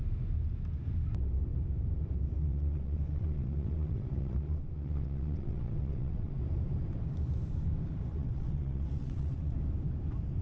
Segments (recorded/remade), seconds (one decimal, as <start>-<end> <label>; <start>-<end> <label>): 0.0-2.4 recorded; 2.4-6.4 remade; 6.4-8.1 recorded; 8.1-9.5 remade; 9.5-10.4 recorded